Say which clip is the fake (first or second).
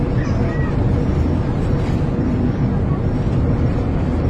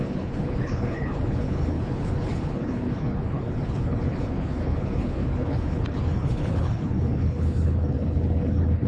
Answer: second